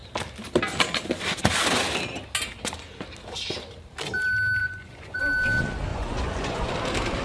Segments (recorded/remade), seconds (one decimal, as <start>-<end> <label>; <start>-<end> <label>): 0.0-4.6 recorded; 4.6-5.2 remade; 5.2-5.9 recorded; 5.9-6.7 remade; 6.7-7.2 recorded